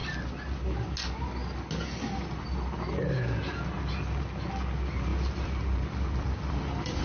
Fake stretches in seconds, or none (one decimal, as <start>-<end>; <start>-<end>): 5.1-7.0